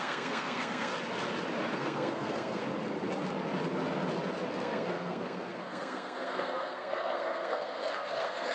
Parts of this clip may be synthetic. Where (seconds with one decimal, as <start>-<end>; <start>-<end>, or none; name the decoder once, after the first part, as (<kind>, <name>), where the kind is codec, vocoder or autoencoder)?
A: 0.0-0.9 (codec, SNAC); 1.7-2.6; 4.5-8.5